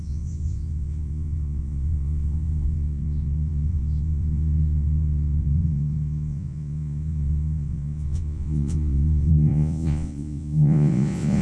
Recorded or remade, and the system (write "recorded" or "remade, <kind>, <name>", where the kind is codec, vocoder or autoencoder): remade, vocoder, Vocos